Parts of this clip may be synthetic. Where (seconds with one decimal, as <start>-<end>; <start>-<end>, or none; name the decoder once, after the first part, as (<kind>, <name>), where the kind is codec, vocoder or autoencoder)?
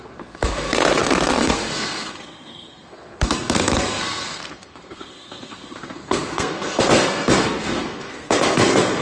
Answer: 0.0-9.0 (codec, SNAC)